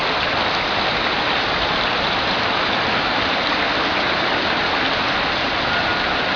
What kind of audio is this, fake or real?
real